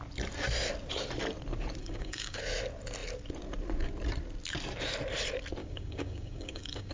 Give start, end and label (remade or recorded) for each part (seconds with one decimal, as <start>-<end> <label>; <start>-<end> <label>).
0.0-1.8 recorded; 1.8-2.4 remade; 2.4-5.6 recorded; 5.6-6.9 remade